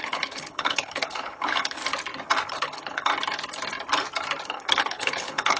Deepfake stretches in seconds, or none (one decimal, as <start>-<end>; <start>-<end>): 0.0-1.8; 2.5-3.1; 4.5-5.6